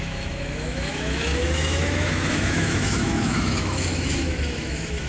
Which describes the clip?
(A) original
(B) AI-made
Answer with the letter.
B